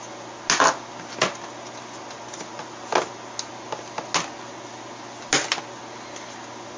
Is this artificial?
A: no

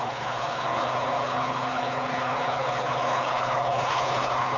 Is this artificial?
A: yes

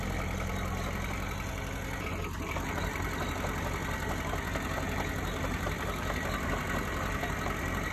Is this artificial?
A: no